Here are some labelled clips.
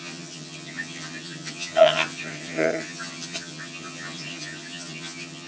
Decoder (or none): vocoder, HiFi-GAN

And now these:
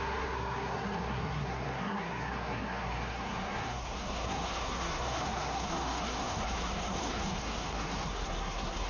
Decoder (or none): codec, SNAC